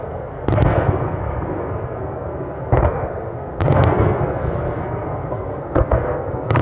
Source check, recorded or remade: remade